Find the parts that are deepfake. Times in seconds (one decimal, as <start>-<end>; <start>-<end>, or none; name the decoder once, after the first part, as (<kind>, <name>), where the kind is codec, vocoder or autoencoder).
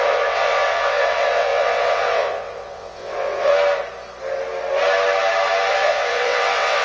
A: 0.0-3.5 (vocoder, WaveNeXt); 5.7-6.8